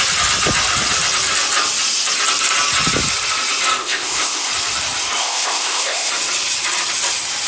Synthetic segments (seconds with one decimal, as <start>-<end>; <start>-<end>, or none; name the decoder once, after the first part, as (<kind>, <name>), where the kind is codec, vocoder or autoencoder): 3.8-4.5 (codec, ZipCodec); 5.2-6.1